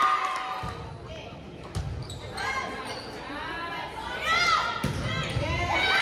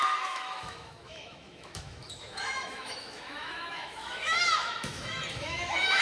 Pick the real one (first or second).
first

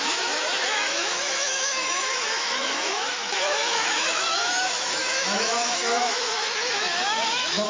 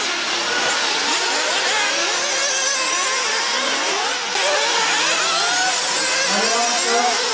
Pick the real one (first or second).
second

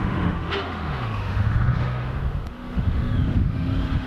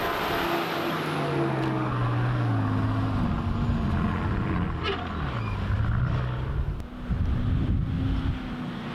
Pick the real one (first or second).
second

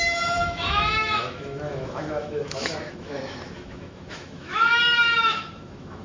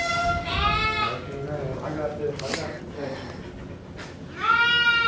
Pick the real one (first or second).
second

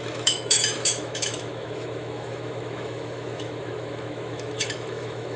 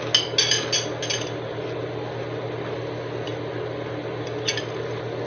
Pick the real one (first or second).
second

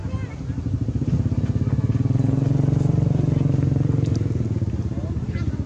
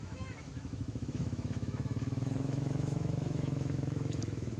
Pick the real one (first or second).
first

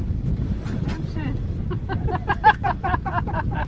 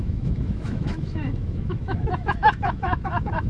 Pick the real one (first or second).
first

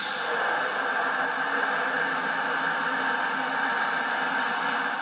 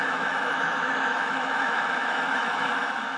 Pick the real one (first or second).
first